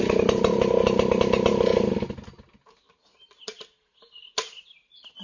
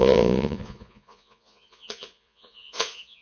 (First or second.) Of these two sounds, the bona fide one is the first